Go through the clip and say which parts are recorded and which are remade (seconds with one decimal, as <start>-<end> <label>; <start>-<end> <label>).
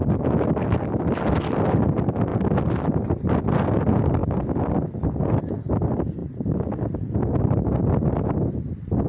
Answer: 0.0-9.1 recorded